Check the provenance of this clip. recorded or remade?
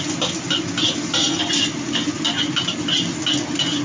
recorded